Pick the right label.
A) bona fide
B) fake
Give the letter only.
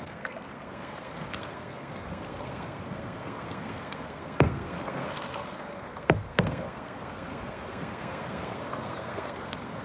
B